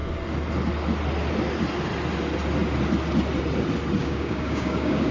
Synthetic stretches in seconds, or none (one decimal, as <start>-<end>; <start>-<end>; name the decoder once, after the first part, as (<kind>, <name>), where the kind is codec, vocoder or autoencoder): 4.0-5.1 (codec, DAC)